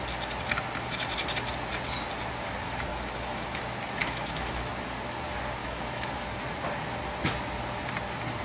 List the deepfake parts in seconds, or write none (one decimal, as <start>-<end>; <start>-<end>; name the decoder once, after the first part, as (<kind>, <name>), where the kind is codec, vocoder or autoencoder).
2.9-3.6 (autoencoder, DAC-VAE); 4.0-4.7; 5.6-6.1